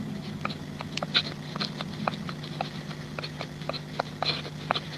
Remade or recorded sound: recorded